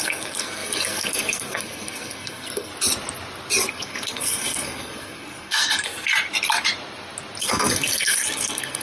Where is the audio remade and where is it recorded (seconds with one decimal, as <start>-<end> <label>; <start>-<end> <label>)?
0.0-2.7 remade; 2.7-3.7 recorded; 3.7-6.1 remade; 6.1-7.4 recorded; 7.4-8.8 remade